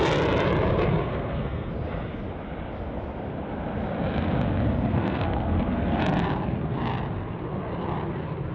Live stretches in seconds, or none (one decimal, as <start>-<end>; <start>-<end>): 0.0-1.0; 1.7-4.9; 6.0-8.5